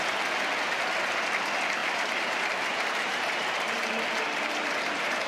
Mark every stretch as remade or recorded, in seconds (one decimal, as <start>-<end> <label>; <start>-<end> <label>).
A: 0.0-1.8 recorded; 1.8-5.3 remade